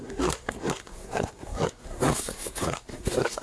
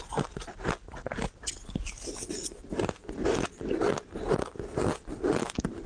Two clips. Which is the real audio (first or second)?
second